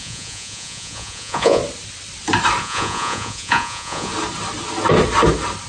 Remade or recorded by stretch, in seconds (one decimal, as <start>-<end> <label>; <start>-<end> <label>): 0.0-1.6 remade; 1.6-2.6 recorded; 2.6-4.1 remade; 4.1-5.7 recorded